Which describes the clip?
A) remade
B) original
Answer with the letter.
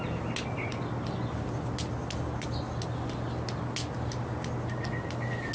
B